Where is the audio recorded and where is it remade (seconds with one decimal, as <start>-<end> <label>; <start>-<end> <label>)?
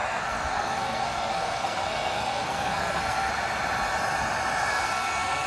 0.0-3.3 remade; 3.3-4.7 recorded; 4.7-5.5 remade